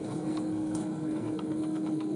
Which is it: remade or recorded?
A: remade